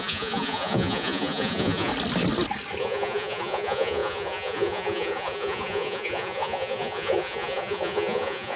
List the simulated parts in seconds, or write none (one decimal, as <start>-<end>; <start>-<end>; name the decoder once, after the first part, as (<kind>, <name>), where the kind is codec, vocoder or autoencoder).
0.0-1.9 (vocoder, Vocos); 2.8-8.6